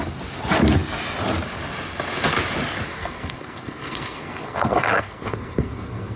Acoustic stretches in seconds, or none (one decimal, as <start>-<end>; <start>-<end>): 0.0-2.9